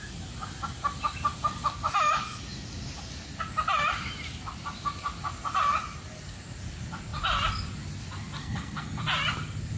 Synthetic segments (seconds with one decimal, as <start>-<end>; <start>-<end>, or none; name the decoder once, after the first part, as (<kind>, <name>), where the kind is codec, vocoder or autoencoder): 8.4-9.0 (codec, SNAC)